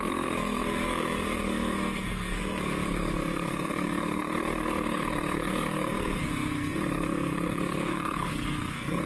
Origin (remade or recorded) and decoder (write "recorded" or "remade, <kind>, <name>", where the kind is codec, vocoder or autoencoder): remade, codec, SNAC